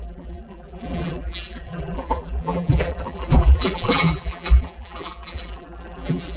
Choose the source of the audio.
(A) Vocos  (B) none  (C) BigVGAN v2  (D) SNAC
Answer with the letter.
C